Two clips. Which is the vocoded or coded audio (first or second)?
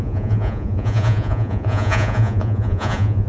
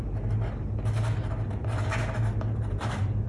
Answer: first